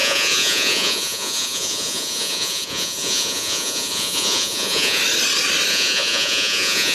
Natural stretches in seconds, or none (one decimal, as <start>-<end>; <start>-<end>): 5.0-5.7